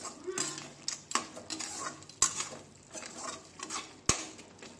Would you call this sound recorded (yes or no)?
yes